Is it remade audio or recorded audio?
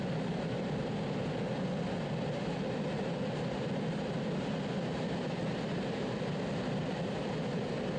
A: recorded